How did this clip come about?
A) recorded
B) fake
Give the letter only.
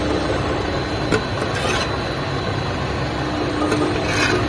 A